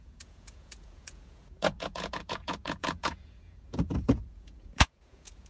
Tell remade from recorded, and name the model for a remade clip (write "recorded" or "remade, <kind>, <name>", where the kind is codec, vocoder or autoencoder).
remade, vocoder, Vocos